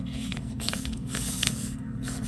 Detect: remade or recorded remade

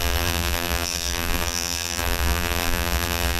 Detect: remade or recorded remade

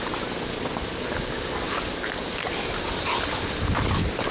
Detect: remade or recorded recorded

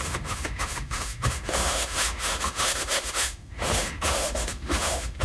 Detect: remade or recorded remade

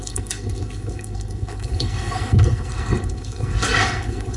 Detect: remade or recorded remade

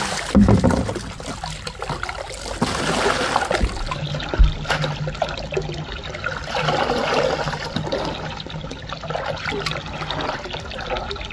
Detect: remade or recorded recorded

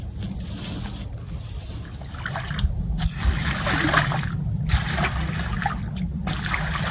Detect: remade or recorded recorded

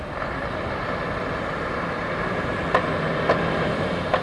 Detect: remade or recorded recorded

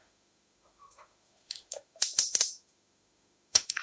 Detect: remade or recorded remade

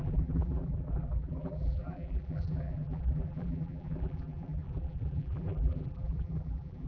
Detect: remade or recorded remade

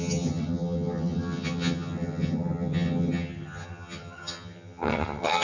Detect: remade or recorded remade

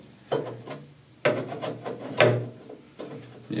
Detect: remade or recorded recorded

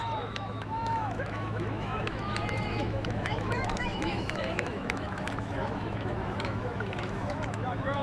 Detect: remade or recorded remade